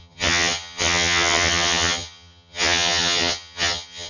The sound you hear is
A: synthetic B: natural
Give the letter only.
A